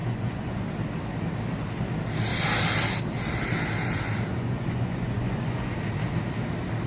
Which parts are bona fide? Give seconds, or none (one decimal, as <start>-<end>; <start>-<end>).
0.6-4.3; 5.7-6.9

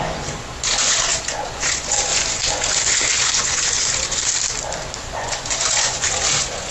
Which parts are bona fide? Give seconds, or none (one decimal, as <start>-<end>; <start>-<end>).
4.3-5.0

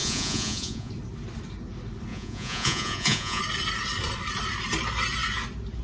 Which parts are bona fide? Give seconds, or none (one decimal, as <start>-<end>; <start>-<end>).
0.9-2.1; 3.4-5.8

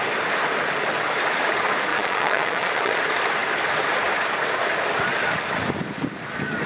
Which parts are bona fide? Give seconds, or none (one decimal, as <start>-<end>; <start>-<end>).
0.0-1.9; 3.0-6.7